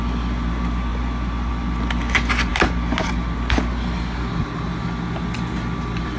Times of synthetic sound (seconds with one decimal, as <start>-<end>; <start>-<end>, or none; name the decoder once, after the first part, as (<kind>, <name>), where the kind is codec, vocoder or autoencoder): none